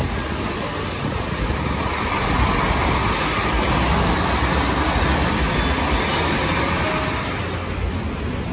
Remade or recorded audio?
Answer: recorded